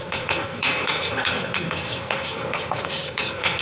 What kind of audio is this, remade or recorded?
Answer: remade